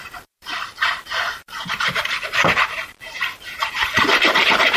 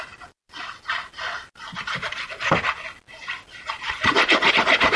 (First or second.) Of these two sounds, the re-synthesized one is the first